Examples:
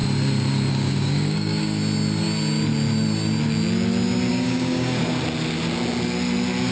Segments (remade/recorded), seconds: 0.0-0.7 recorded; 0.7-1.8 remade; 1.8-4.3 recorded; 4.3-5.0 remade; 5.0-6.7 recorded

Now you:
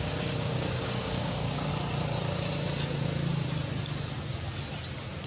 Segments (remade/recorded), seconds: 0.0-1.7 remade; 1.7-5.3 recorded

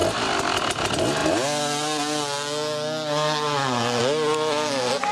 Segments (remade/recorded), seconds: 0.0-5.1 recorded

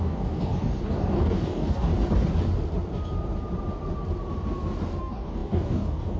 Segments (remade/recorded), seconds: 0.0-1.9 remade; 1.9-5.0 recorded; 5.0-6.2 remade

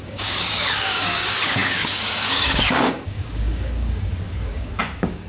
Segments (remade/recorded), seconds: 0.0-5.3 remade

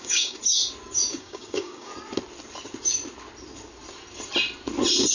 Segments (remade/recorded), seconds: 0.0-0.4 remade; 0.4-1.1 recorded; 1.1-1.9 remade; 1.9-5.1 recorded